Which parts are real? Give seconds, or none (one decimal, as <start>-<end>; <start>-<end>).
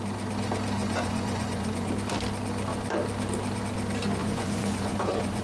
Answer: 0.0-0.8; 1.9-4.2